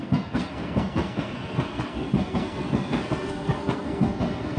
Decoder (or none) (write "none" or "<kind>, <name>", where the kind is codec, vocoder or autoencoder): codec, SNAC